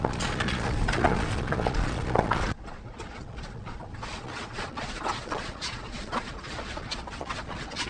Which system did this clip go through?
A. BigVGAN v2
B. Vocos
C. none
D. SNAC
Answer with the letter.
B